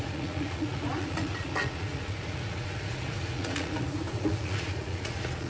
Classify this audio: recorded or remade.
remade